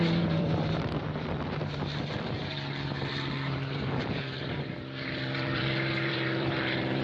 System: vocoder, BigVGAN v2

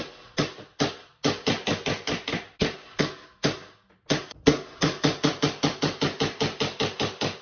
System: none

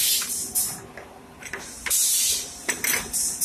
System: none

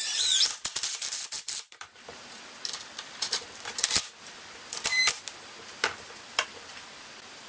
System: vocoder, BigVGAN v2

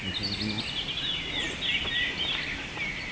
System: none